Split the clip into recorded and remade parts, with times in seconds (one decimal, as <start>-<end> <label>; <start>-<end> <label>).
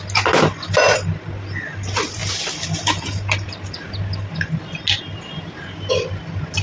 0.0-6.6 recorded